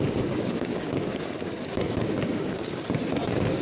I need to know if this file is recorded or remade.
remade